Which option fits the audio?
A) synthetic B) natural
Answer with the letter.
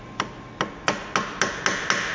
B